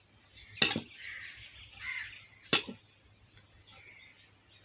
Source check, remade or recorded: recorded